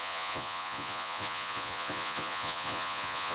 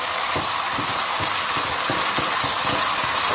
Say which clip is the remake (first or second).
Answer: first